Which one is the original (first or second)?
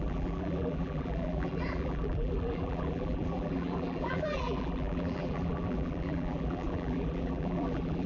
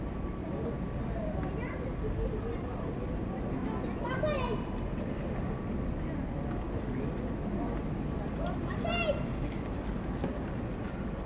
second